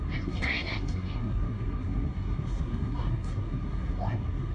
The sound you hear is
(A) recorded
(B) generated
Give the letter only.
B